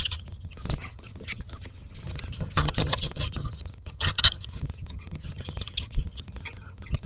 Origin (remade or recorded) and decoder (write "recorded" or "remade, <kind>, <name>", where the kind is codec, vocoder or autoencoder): remade, vocoder, HiFi-GAN